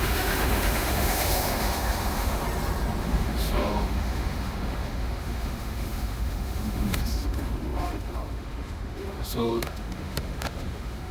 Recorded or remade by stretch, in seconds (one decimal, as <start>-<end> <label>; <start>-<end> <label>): 0.0-2.4 remade; 2.4-3.0 recorded; 3.0-11.1 remade